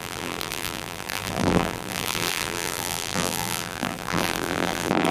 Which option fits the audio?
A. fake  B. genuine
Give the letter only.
A